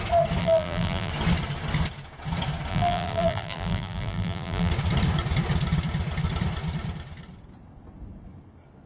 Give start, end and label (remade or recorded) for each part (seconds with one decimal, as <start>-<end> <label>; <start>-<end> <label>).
0.0-0.4 recorded; 0.4-1.1 remade; 1.1-2.7 recorded; 2.7-4.7 remade; 4.7-8.9 recorded